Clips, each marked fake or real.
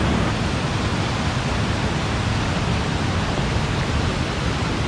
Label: real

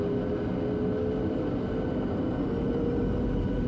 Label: real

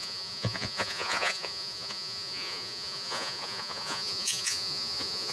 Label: fake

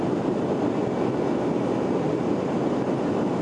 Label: real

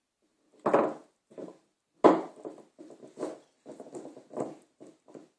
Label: real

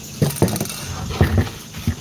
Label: real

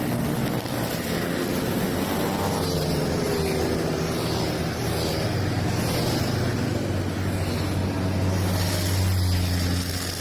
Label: real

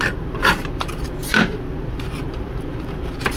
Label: fake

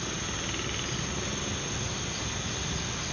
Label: real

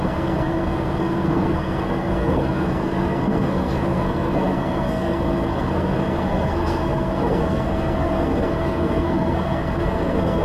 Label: fake